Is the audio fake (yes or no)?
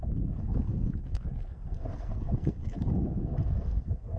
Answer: yes